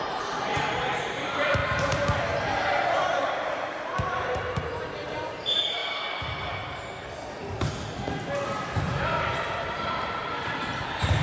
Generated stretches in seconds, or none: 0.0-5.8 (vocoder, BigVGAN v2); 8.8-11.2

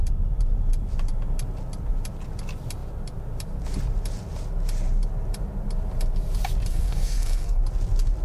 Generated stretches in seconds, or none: 6.7-7.6 (codec, SNAC)

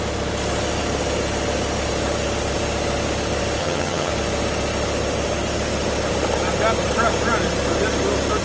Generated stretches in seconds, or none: 3.6-4.1 (vocoder, HiFi-GAN)